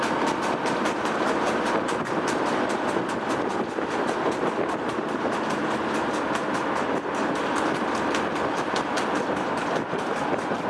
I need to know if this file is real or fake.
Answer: real